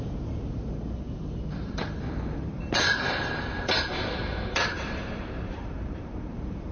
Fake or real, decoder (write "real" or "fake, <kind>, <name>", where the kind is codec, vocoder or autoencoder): fake, vocoder, BigVGAN v2